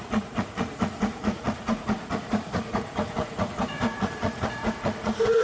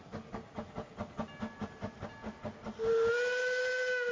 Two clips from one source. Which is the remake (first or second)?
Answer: first